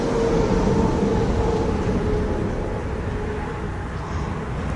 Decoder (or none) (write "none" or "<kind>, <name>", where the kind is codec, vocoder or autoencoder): none